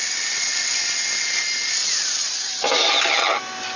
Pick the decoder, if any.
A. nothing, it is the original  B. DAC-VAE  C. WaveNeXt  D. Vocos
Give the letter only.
A